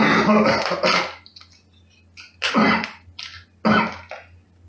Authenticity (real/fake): real